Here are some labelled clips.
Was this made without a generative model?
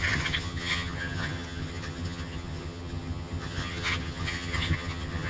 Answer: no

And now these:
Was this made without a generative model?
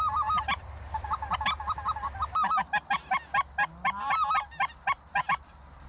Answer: yes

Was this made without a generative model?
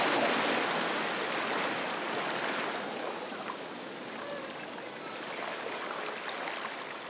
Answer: yes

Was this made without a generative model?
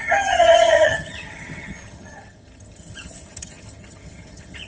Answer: no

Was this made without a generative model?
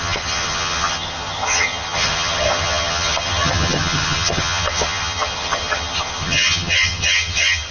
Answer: no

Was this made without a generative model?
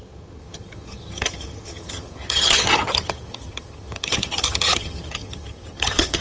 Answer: no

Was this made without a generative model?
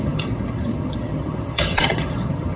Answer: no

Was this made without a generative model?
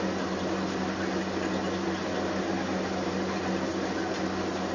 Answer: yes